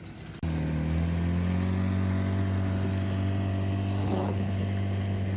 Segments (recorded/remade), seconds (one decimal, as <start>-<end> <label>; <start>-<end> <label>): 0.0-4.0 recorded; 4.0-4.6 remade; 4.6-5.4 recorded